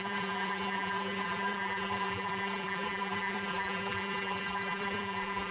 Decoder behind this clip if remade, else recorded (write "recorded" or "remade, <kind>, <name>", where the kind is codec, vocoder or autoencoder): remade, vocoder, BigVGAN v2